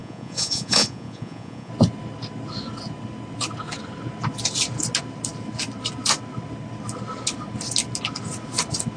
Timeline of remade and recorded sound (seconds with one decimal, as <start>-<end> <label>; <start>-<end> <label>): 0.0-1.7 remade; 1.7-9.0 recorded